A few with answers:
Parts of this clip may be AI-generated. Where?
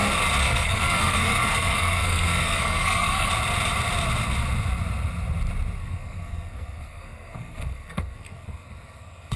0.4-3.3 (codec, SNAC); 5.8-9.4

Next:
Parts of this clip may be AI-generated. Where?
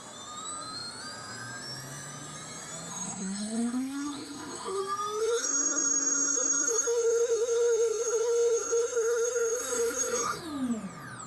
2.9-4.8 (codec, SNAC); 5.2-10.4